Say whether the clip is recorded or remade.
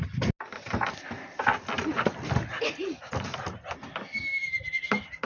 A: recorded